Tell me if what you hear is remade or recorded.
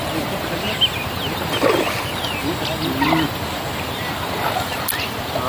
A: recorded